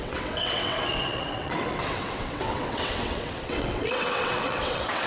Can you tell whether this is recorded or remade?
remade